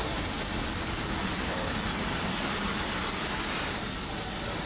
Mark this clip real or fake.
real